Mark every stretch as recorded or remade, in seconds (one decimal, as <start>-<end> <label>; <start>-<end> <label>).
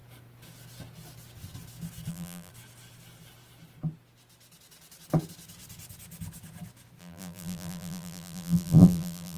0.0-2.1 recorded; 2.1-2.5 remade; 2.5-7.0 recorded; 7.0-9.4 remade